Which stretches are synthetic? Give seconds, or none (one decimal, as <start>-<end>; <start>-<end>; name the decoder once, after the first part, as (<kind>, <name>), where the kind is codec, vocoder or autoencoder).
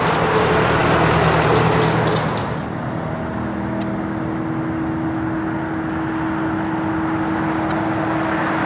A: none